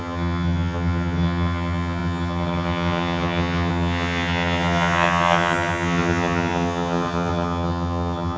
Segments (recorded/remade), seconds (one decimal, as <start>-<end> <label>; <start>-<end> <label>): 0.0-8.4 remade